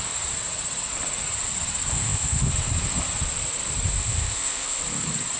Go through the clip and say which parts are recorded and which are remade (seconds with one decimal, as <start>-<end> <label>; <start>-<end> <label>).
0.0-1.9 recorded; 1.9-2.5 remade; 2.5-4.0 recorded; 4.0-4.8 remade; 4.8-5.4 recorded